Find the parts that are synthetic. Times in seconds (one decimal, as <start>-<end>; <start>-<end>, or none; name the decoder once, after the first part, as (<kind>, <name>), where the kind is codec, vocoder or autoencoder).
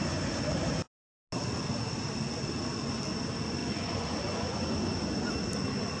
3.6-5.1 (vocoder, Vocos)